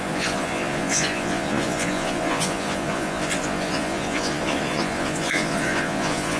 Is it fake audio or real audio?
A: fake